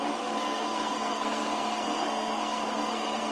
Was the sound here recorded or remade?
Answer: remade